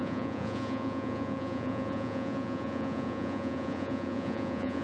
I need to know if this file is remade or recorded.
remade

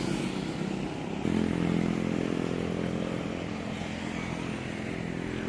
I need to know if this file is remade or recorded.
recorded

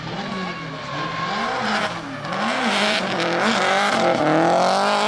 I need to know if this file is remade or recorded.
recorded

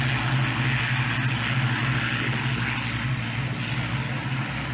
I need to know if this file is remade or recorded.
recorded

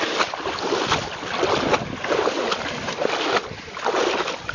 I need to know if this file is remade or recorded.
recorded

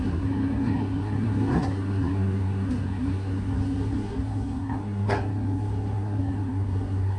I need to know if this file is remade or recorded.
remade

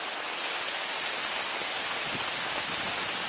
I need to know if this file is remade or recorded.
recorded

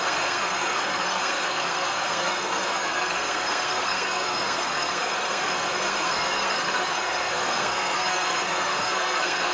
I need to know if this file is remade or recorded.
remade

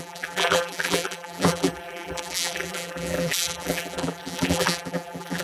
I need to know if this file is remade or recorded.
remade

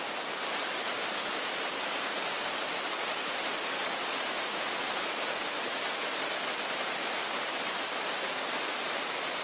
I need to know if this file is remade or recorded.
recorded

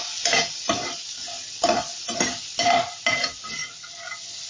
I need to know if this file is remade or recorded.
recorded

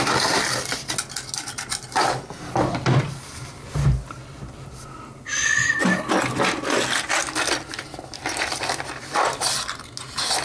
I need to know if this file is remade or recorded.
recorded